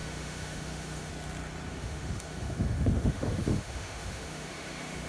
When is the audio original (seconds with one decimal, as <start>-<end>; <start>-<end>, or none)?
1.1-1.7

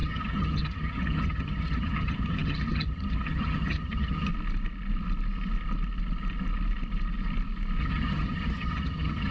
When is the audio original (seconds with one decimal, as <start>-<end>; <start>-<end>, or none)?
4.3-7.8

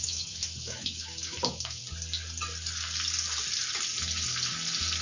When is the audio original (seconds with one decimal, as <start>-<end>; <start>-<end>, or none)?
1.8-5.0